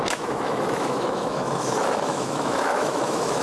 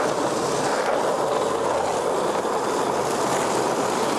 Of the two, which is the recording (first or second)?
second